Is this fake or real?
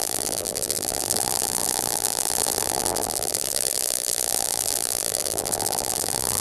fake